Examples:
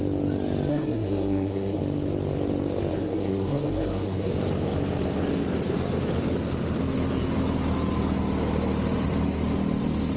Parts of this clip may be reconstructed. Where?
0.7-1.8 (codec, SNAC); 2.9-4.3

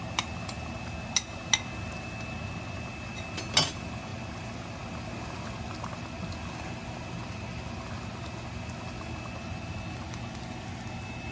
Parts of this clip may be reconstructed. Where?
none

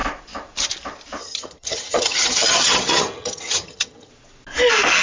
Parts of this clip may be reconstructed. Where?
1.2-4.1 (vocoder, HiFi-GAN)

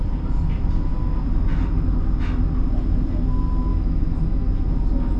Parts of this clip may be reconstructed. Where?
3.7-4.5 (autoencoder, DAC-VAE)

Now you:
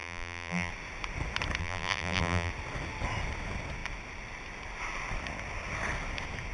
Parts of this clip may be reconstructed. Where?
0.0-0.7 (vocoder, BigVGAN v2); 1.6-2.5